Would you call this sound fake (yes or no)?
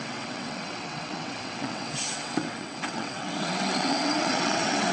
yes